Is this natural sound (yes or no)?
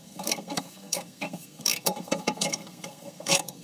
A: no